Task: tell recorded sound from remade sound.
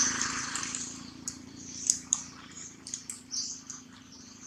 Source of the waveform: remade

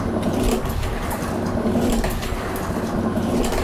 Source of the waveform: recorded